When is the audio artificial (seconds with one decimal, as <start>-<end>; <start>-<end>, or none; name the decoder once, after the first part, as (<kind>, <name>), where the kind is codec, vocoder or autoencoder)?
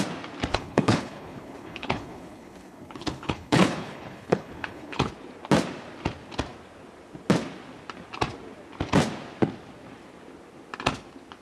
0.5-5.1 (codec, HILCodec)